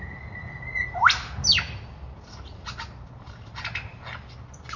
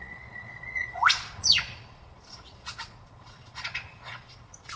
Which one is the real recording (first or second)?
first